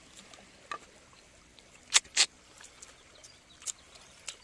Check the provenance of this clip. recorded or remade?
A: recorded